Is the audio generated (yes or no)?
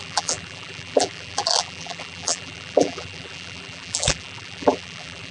yes